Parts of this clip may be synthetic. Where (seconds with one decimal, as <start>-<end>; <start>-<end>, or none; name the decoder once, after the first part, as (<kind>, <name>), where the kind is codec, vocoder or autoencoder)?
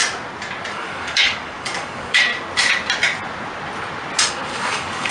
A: 0.7-2.3 (codec, DAC); 4.3-5.1